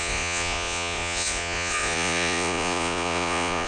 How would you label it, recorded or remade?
remade